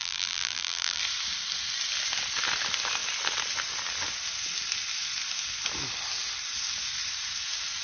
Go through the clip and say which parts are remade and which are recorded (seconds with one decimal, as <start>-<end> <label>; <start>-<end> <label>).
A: 0.0-1.0 remade; 1.0-7.8 recorded